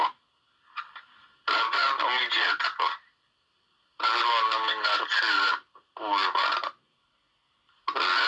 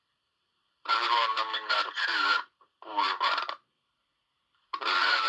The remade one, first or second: second